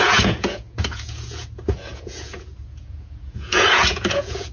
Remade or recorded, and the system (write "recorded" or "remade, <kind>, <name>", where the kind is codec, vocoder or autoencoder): remade, vocoder, Vocos